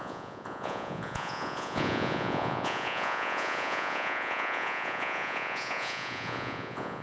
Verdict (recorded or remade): remade